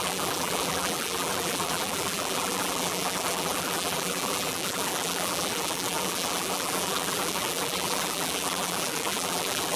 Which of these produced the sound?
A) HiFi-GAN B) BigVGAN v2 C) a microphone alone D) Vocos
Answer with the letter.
B